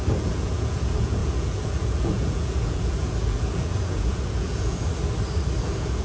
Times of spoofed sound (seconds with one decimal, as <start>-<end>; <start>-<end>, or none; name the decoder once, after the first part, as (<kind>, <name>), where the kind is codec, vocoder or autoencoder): 0.0-4.9 (vocoder, Vocos); 5.6-6.0